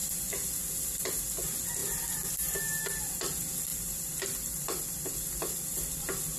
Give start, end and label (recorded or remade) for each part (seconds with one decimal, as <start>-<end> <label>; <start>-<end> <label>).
0.0-1.2 remade; 1.2-1.8 recorded; 1.8-2.8 remade; 2.8-3.7 recorded; 3.7-5.8 remade; 5.8-6.4 recorded